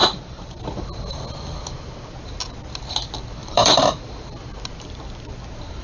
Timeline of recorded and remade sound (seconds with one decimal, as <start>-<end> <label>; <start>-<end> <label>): 0.0-0.6 remade; 0.6-3.4 recorded; 3.4-4.4 remade; 4.4-5.8 recorded